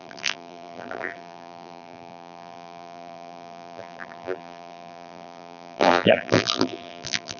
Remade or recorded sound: remade